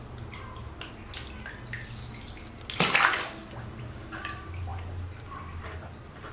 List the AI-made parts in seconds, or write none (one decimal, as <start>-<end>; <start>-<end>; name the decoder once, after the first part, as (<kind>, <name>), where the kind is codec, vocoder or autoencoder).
none